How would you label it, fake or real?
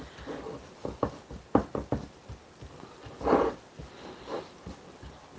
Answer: real